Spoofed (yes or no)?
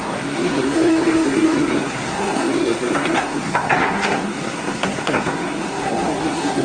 yes